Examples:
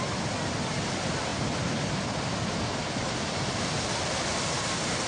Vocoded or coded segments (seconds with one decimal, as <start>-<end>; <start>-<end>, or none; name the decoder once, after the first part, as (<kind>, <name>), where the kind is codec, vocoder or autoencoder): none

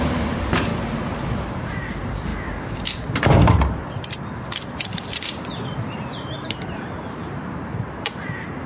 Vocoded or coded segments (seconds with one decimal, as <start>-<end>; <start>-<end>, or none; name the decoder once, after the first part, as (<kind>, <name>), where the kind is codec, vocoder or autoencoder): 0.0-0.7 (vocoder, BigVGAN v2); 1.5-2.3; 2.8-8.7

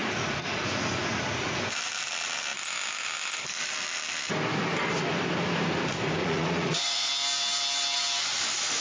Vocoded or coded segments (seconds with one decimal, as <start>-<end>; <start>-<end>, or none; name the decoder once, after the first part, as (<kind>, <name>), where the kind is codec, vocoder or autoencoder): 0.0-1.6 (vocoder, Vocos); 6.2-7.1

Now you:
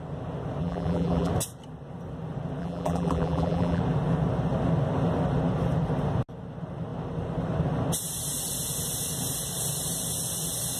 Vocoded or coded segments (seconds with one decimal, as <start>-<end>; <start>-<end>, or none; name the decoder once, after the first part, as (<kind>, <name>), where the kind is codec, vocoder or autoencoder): 0.6-1.3 (vocoder, BigVGAN v2); 2.6-3.8

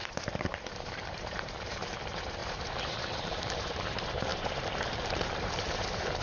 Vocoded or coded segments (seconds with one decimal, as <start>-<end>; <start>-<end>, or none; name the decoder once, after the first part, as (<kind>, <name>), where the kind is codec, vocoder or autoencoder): 0.0-6.2 (vocoder, BigVGAN v2)

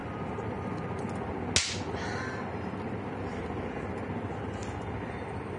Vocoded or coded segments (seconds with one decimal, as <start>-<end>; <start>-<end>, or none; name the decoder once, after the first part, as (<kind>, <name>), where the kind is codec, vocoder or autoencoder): none

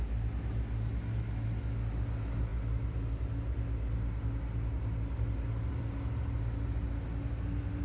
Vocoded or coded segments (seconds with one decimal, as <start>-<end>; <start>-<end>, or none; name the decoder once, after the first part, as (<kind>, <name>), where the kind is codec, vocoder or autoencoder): none